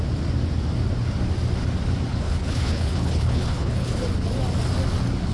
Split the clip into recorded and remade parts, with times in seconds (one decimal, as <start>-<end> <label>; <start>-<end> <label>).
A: 0.0-2.1 recorded; 2.1-4.0 remade; 4.0-5.3 recorded